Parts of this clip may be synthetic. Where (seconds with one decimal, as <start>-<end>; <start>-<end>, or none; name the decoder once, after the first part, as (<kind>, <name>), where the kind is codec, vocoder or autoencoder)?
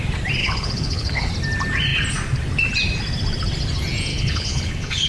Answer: 0.4-1.3 (codec, HILCodec); 4.1-5.1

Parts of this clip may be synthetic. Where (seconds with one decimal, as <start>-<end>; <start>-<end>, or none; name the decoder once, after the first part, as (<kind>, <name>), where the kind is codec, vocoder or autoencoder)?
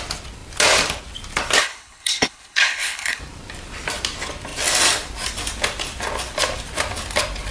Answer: 1.6-3.2 (codec, HILCodec)